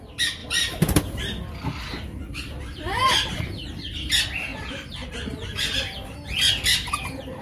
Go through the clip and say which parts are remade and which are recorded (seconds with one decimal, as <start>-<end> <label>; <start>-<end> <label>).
0.0-0.4 recorded; 0.4-1.0 remade; 1.0-3.1 recorded; 3.1-3.8 remade; 3.8-7.4 recorded

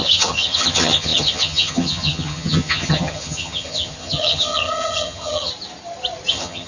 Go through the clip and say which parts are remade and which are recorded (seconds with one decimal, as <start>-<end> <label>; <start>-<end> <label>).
0.0-5.5 remade; 5.5-6.3 recorded; 6.3-6.7 remade

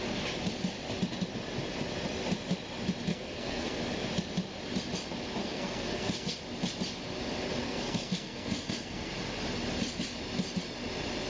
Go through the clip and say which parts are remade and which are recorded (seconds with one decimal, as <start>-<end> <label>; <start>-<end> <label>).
0.0-3.1 recorded; 3.1-3.8 remade; 3.8-5.4 recorded; 5.4-6.4 remade; 6.4-7.6 recorded; 7.6-9.1 remade; 9.1-11.3 recorded

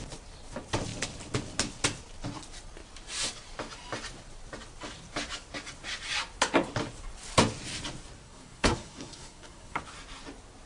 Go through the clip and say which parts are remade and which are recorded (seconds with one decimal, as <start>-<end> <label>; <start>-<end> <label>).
0.0-8.2 recorded; 8.2-9.8 remade; 9.8-10.7 recorded